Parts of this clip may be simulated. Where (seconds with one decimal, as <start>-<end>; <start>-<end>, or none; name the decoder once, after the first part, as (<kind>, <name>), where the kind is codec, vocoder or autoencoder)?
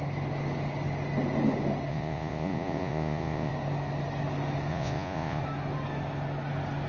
1.9-3.5 (vocoder, Vocos); 4.7-5.4